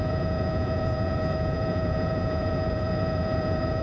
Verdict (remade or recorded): remade